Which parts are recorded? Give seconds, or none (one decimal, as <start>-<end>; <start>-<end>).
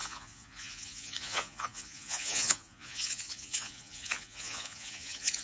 none